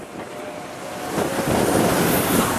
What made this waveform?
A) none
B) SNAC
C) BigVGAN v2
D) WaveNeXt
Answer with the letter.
A